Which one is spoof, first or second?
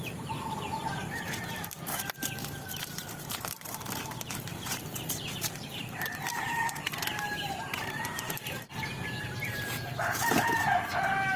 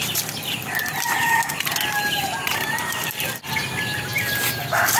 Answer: first